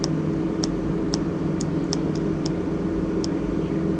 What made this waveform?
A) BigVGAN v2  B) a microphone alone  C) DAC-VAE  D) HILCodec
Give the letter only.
B